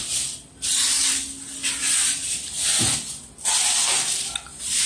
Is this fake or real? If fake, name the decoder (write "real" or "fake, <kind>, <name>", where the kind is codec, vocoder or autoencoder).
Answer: real